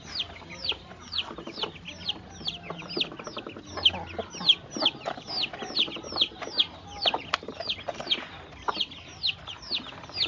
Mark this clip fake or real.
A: real